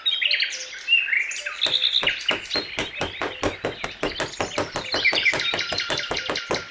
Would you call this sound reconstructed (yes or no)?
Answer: no